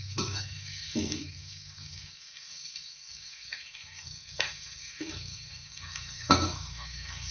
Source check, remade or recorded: remade